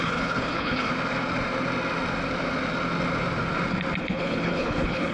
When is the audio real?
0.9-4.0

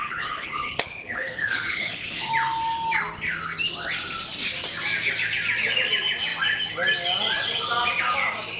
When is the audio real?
2.3-8.6

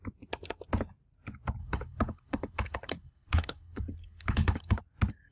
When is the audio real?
0.0-1.6; 4.8-5.3

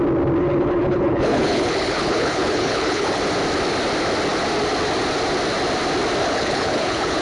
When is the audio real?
0.0-0.4; 3.2-6.2

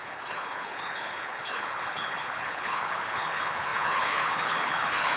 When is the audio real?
none

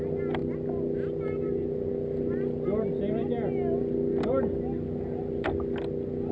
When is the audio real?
0.0-6.3

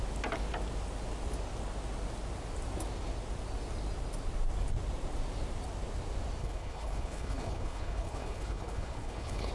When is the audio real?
0.0-6.4